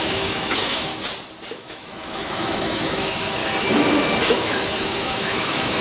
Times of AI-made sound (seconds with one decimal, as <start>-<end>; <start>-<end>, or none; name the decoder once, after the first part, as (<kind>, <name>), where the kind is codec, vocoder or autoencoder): 0.0-0.9 (autoencoder, DAC-VAE); 1.5-3.4; 4.3-5.8